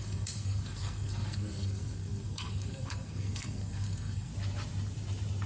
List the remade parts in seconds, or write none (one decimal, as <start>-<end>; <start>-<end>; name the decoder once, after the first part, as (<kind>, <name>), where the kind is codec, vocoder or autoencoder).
0.0-4.3 (codec, SNAC)

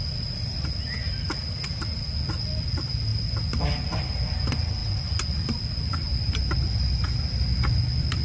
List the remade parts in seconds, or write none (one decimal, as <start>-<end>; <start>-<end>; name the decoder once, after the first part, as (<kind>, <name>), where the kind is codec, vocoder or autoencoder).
none

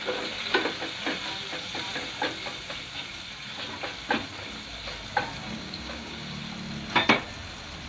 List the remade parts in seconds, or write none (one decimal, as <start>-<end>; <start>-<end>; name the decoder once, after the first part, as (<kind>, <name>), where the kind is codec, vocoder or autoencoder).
5.4-6.4 (codec, DAC)

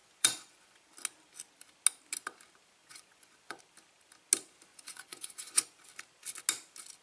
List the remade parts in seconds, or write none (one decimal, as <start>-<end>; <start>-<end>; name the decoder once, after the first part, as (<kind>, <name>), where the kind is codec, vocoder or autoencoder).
0.0-0.8 (vocoder, Vocos); 2.8-3.6; 4.7-5.9